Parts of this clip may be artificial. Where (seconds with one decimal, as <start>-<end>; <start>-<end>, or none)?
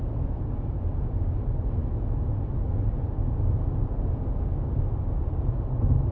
1.8-2.7